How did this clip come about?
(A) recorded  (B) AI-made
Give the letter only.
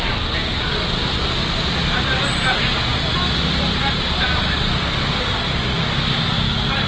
A